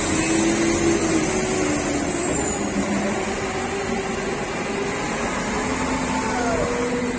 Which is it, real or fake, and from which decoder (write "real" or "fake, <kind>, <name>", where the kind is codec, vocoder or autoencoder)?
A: real